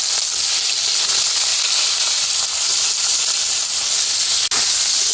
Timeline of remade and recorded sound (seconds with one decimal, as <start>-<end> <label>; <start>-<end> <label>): 0.0-5.1 recorded

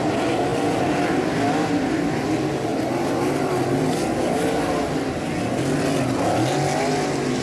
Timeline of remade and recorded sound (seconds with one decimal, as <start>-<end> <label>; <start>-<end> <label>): 0.0-7.4 recorded

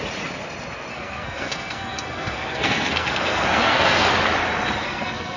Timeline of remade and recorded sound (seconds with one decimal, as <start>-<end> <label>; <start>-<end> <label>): 0.0-0.9 recorded; 0.9-4.1 remade; 4.1-4.8 recorded; 4.8-5.4 remade

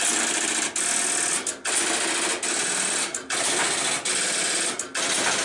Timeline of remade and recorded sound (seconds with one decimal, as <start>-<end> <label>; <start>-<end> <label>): 0.0-5.4 recorded

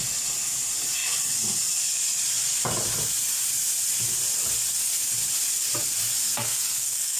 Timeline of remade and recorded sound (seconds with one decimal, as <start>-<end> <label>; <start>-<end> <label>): 0.0-6.2 recorded; 6.2-7.2 remade

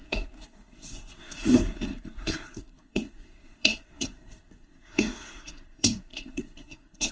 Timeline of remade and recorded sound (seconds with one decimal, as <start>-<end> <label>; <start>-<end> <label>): 0.0-7.1 remade